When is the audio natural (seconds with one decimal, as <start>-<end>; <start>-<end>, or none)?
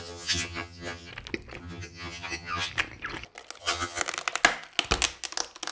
1.1-1.6; 2.7-3.6; 4.0-5.7